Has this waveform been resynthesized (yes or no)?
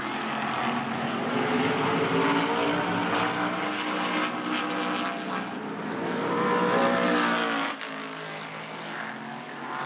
no